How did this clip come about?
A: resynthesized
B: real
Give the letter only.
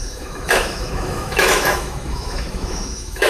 A